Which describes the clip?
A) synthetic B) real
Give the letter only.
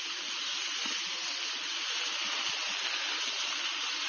B